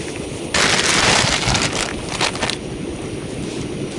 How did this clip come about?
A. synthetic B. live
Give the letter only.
B